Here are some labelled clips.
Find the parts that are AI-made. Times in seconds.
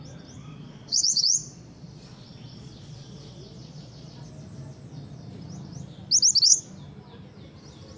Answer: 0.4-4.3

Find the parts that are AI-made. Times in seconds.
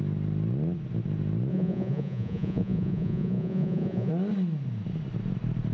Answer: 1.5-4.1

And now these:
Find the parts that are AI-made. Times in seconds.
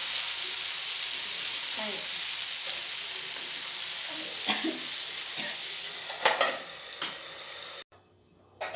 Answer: none